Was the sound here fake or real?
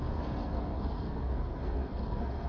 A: fake